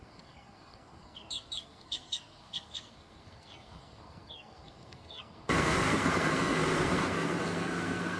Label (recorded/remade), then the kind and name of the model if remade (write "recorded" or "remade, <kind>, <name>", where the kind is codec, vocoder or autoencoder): remade, codec, SNAC